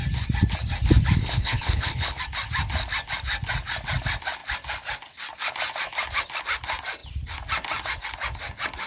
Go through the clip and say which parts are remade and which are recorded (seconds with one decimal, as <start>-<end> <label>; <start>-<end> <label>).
0.0-1.2 recorded; 1.2-2.2 remade; 2.2-8.9 recorded